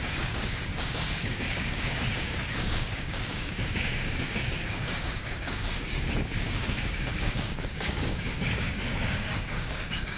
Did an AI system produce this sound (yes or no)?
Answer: yes